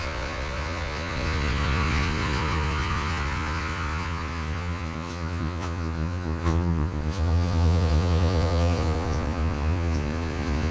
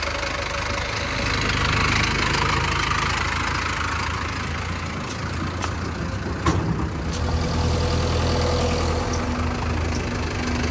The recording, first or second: second